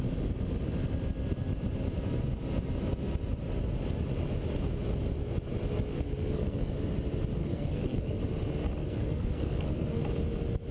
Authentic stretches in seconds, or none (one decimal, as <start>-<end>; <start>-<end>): 0.0-5.9; 6.7-7.4; 8.2-8.8; 10.0-10.7